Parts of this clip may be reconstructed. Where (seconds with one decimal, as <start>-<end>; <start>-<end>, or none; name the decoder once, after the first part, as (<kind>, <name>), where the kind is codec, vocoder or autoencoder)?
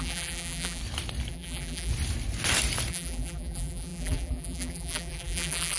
0.0-0.8 (vocoder, BigVGAN v2); 1.3-1.9; 2.9-5.8